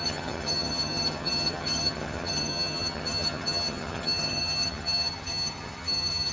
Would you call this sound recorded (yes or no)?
no